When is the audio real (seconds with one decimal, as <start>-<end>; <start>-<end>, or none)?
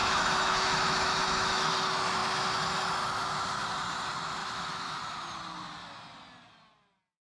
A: 1.7-4.4; 5.0-7.3